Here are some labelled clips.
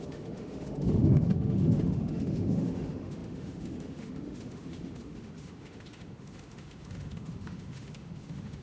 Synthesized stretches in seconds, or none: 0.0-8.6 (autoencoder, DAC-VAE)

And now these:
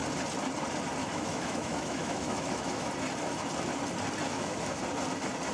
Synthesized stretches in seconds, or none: 1.0-2.9 (autoencoder, DAC-VAE); 4.3-4.8

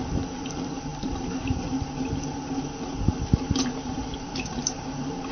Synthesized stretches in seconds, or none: none

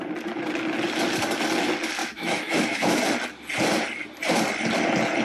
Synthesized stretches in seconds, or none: 2.0-3.0 (autoencoder, DAC-VAE)